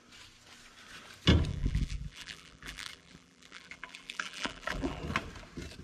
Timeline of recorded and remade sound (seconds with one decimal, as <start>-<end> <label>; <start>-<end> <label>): 0.0-1.5 recorded; 1.5-5.0 remade; 5.0-5.8 recorded